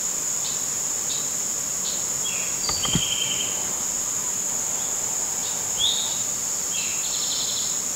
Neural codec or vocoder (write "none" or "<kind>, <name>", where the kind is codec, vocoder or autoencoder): none